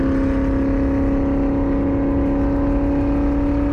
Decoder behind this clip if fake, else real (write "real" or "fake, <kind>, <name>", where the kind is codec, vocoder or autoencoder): real